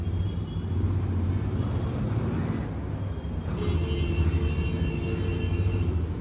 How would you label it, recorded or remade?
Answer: recorded